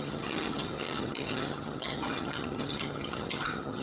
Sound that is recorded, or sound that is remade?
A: remade